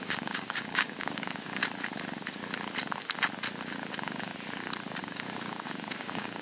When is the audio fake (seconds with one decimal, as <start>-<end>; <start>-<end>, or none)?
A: 0.0-1.6; 3.9-4.3; 5.0-6.4

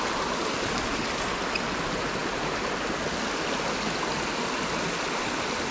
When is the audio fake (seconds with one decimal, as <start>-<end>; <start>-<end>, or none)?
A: none

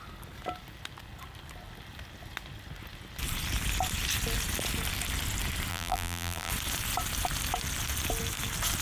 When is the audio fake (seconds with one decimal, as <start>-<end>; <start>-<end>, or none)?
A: 5.7-6.5